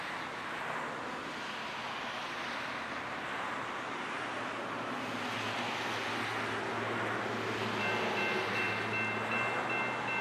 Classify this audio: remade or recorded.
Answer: recorded